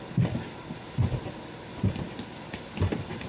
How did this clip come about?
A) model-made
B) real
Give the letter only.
B